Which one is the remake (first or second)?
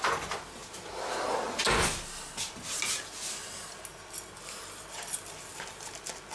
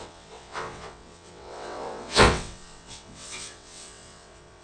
second